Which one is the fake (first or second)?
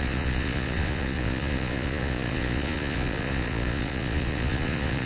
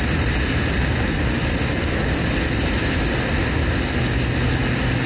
first